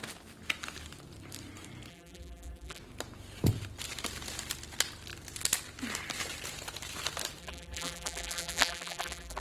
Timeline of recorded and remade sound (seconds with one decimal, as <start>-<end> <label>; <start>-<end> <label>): 0.0-1.9 recorded; 1.9-2.8 remade; 2.8-7.4 recorded; 7.4-9.4 remade